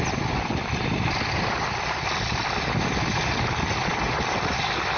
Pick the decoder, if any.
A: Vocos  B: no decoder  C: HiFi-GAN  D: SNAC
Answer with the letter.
B